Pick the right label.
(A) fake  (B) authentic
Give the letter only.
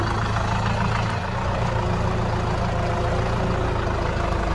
B